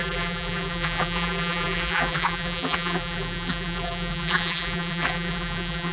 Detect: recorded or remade remade